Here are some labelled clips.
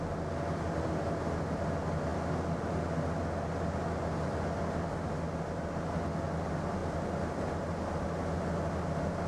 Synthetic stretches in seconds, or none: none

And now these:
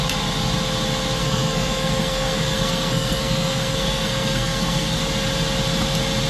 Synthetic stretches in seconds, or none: 1.2-5.0 (codec, SNAC)

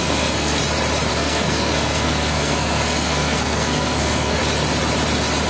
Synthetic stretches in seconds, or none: 0.0-0.6 (codec, SNAC); 1.1-4.4

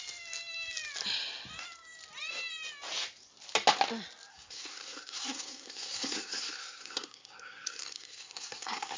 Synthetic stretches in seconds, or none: 4.3-9.0 (codec, SNAC)

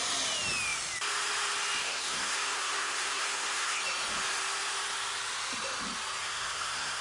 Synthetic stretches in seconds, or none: 1.8-3.8 (codec, SNAC); 6.2-7.0